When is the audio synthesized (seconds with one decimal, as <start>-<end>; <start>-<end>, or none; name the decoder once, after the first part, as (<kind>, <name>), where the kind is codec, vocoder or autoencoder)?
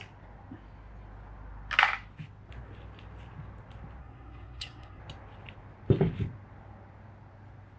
4.0-5.0 (codec, SNAC)